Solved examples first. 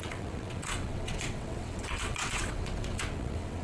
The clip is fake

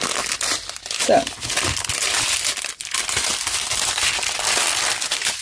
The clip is real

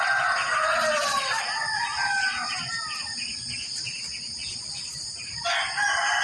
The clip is real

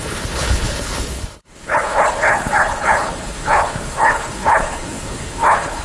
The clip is fake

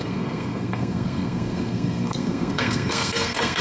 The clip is fake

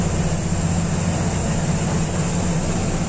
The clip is real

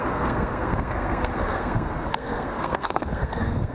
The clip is fake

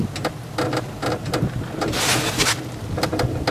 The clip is real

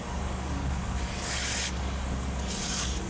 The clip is fake